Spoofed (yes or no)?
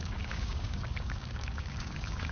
yes